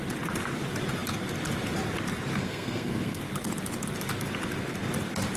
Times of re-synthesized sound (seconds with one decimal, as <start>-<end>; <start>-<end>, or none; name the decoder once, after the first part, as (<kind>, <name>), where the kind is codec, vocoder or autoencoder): 2.4-3.2 (codec, SNAC)